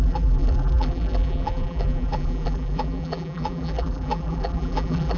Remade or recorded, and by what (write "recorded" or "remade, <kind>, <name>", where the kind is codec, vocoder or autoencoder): remade, vocoder, BigVGAN v2